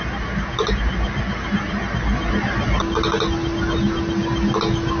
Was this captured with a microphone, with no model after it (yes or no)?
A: yes